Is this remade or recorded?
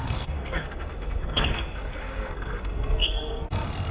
remade